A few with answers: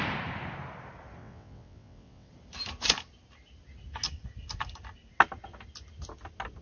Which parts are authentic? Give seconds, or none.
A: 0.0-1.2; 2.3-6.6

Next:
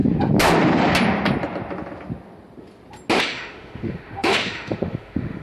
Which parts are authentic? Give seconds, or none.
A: 0.0-3.2

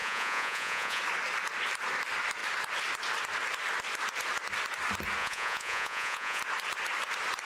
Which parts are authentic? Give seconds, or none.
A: 1.0-5.2; 6.4-7.4

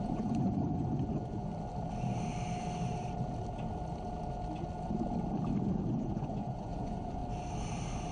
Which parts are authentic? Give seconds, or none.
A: 1.5-5.9; 7.2-8.1

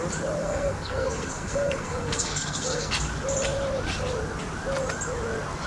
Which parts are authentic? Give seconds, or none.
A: 0.0-0.4; 2.9-5.7